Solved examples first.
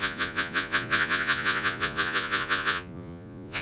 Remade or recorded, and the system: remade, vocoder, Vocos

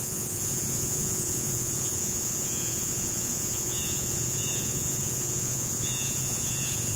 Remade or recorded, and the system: remade, vocoder, Vocos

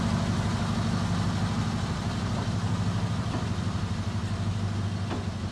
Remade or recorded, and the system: recorded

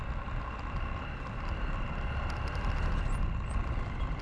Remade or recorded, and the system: recorded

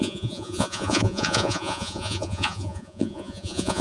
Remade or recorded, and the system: remade, vocoder, Vocos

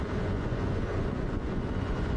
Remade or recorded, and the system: remade, vocoder, Vocos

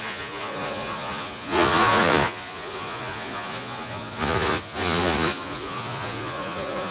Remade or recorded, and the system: remade, vocoder, Vocos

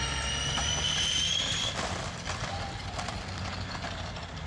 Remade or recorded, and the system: recorded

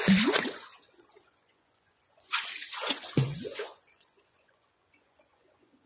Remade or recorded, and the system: remade, vocoder, Vocos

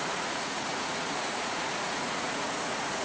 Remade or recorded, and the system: remade, vocoder, Vocos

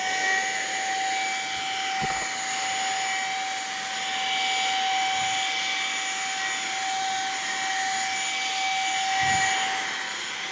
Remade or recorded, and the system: recorded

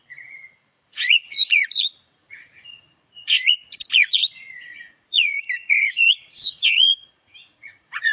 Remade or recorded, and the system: remade, vocoder, Vocos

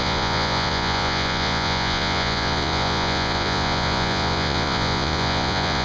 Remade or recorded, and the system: remade, vocoder, Vocos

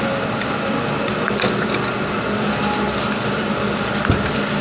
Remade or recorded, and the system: recorded